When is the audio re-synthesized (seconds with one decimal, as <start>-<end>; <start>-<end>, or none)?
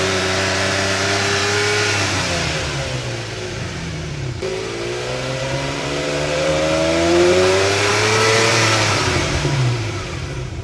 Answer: 0.0-1.4; 3.5-4.5; 5.4-6.5; 7.1-10.6